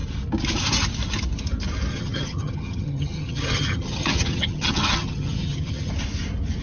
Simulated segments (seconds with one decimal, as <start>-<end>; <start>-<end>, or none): 1.9-5.9